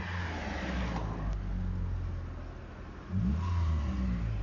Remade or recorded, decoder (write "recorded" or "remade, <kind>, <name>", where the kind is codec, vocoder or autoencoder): recorded